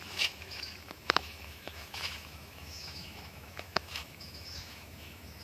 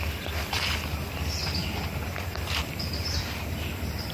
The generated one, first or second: first